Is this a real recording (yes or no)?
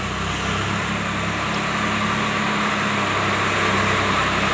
yes